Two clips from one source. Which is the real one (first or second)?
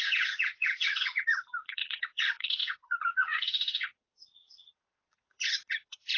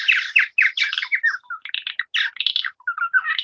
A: second